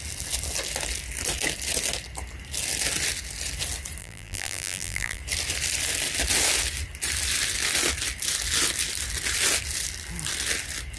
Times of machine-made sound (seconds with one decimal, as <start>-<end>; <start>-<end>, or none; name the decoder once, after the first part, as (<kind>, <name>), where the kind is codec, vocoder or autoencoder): 4.0-5.2 (vocoder, BigVGAN v2)